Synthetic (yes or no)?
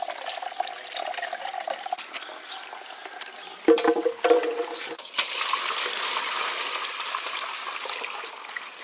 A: no